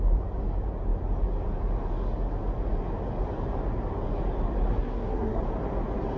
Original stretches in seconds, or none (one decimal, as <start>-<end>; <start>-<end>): 0.0-4.7; 5.4-6.2